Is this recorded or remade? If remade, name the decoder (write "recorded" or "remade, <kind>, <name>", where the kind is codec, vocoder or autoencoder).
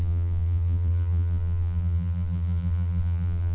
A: remade, vocoder, BigVGAN v2